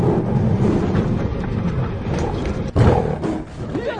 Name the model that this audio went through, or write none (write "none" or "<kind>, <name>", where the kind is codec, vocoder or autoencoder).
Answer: none